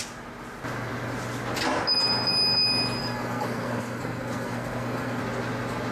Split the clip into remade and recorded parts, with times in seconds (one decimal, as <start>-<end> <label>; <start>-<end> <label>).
0.0-3.0 recorded; 3.0-5.2 remade; 5.2-5.9 recorded